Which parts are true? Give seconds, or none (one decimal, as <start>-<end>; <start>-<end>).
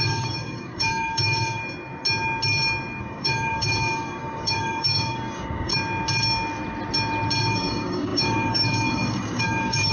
1.6-3.0; 5.7-7.4